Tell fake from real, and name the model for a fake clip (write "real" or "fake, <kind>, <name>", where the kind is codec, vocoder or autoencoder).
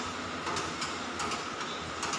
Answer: real